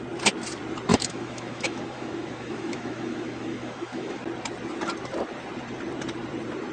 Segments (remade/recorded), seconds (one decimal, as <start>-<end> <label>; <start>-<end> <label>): 0.0-0.9 recorded; 0.9-4.2 remade; 4.2-6.7 recorded